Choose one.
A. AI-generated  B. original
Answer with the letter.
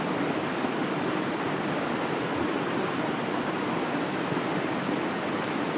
B